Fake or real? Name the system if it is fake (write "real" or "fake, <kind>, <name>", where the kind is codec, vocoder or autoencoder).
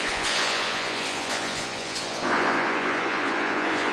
fake, vocoder, Vocos